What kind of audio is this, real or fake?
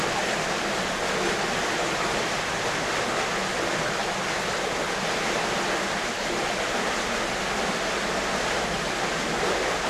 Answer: real